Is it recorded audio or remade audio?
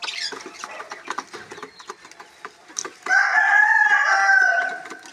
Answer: recorded